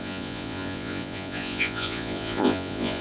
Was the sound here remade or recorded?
remade